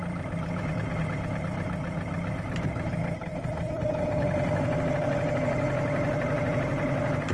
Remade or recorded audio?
recorded